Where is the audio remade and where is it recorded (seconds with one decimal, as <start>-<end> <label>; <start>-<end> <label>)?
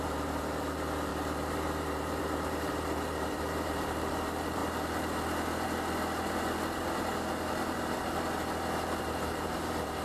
0.0-4.6 remade; 4.6-9.0 recorded; 9.0-10.0 remade